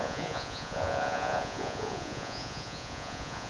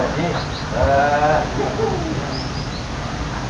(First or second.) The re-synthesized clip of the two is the first